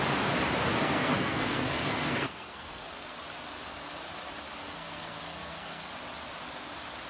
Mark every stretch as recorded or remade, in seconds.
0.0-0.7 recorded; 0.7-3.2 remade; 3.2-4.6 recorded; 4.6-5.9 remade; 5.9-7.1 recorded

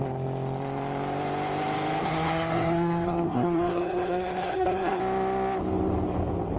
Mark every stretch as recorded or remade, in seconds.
0.0-2.0 recorded; 2.0-5.0 remade; 5.0-6.6 recorded

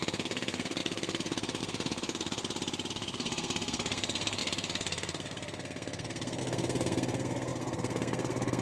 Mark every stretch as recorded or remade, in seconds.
0.0-2.4 remade; 2.4-2.9 recorded; 2.9-8.6 remade

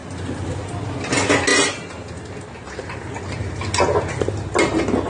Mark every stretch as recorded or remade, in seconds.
0.0-5.1 recorded

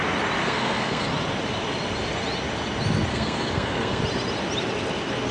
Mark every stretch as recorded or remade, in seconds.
0.0-0.4 recorded; 0.4-1.1 remade; 1.1-3.1 recorded; 3.1-4.0 remade; 4.0-5.3 recorded

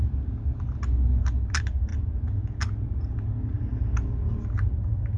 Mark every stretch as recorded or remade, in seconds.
0.0-5.2 recorded